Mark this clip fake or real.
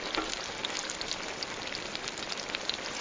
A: real